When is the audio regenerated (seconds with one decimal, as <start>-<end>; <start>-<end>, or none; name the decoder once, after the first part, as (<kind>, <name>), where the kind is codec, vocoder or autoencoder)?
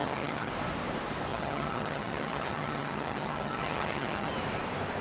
0.0-0.5 (vocoder, HiFi-GAN); 1.3-4.3